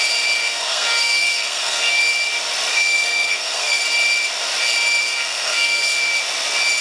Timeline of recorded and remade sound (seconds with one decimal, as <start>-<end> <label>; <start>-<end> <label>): 0.0-0.4 recorded; 0.4-2.0 remade; 2.0-2.7 recorded; 2.7-3.8 remade; 3.8-5.0 recorded; 5.0-6.1 remade; 6.1-6.8 recorded